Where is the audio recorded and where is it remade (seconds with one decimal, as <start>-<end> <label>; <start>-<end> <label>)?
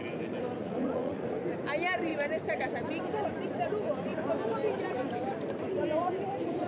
0.0-0.6 recorded; 0.6-1.4 remade; 1.4-6.7 recorded